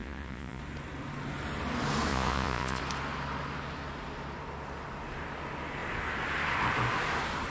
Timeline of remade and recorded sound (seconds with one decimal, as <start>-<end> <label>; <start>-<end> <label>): 0.0-0.6 remade; 0.6-2.1 recorded; 2.1-2.8 remade; 2.8-7.5 recorded